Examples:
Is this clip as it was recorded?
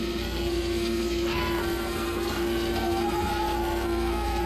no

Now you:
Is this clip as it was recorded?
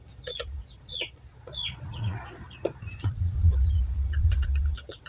no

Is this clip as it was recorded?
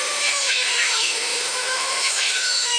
no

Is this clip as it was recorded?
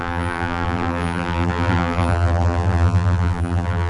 no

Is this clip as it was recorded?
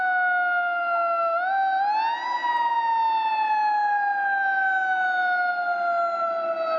yes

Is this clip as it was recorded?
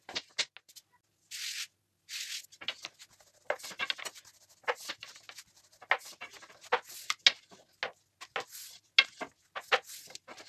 yes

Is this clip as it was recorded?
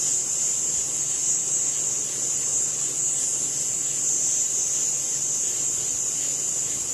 yes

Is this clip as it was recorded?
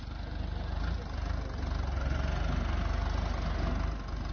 yes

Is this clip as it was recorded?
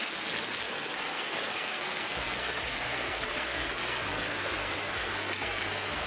no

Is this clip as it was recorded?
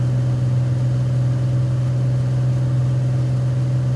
yes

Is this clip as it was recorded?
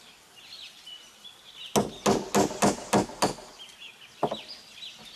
yes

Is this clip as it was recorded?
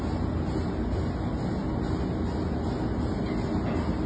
yes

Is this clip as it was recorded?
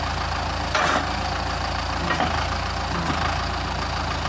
yes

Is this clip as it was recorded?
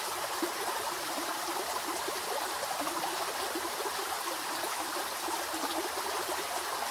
yes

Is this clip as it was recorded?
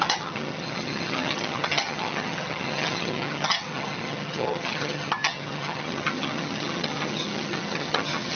no